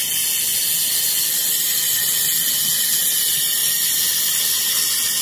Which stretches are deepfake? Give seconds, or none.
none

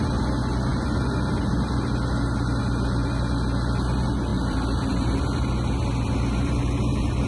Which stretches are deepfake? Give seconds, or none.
4.3-5.2 (vocoder, BigVGAN v2)

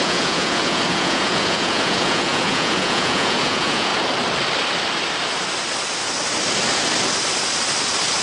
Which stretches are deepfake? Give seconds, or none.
0.0-3.9 (vocoder, Vocos)

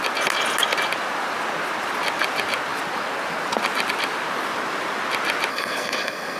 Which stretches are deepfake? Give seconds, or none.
5.5-6.4 (codec, SNAC)